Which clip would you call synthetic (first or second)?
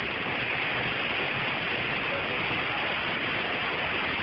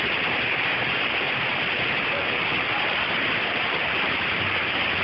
second